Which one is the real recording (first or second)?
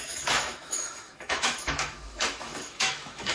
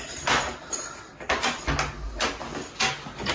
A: second